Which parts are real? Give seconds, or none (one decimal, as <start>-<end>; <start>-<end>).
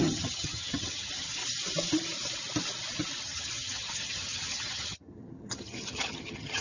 1.4-3.2